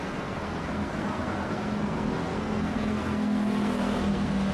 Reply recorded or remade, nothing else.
remade